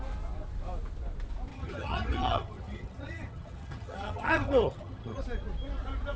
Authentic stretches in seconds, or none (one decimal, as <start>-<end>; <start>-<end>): 0.0-1.5; 5.2-6.2